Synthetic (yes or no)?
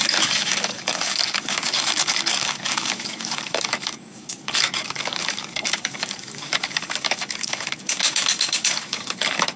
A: yes